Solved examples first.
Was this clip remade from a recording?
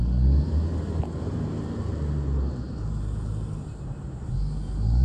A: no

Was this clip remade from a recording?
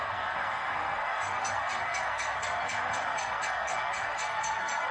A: yes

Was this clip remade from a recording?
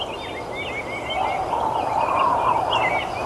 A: no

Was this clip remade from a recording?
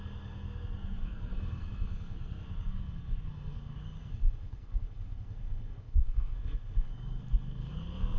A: yes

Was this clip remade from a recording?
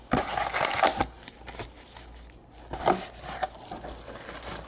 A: no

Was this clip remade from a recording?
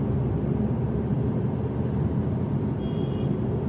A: no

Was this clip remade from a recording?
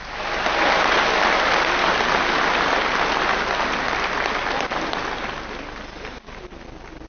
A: no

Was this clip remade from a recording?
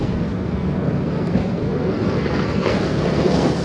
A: yes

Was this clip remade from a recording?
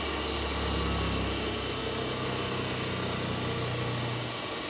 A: no